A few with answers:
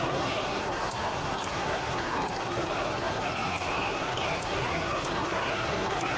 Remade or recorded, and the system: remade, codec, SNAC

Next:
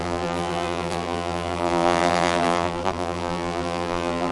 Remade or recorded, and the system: remade, vocoder, BigVGAN v2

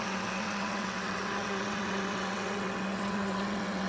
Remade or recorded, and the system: remade, vocoder, WaveNeXt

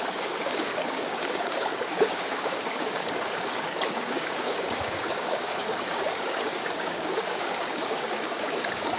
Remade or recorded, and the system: remade, codec, DAC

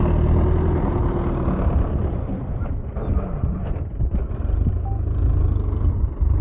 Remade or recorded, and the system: recorded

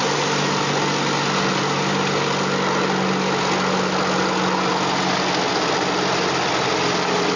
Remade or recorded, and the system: recorded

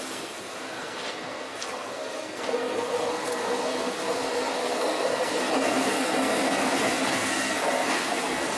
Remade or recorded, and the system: remade, codec, SNAC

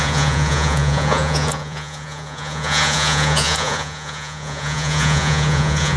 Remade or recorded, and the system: remade, vocoder, Vocos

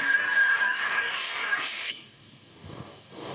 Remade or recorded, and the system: remade, codec, DAC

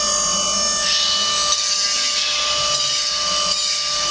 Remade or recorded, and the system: recorded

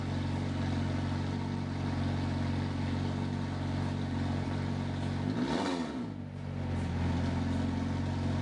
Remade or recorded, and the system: recorded